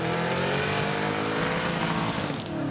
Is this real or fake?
real